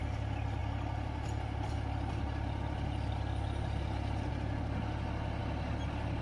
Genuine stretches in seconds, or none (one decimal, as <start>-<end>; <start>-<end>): 0.0-6.2